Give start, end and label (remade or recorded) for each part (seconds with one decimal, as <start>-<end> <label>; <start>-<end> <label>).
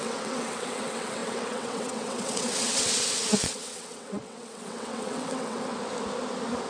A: 0.0-5.7 remade; 5.7-6.7 recorded